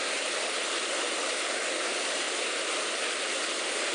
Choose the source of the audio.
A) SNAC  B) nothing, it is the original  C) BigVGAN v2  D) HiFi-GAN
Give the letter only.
B